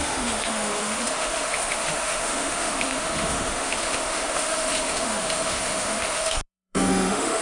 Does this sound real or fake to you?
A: fake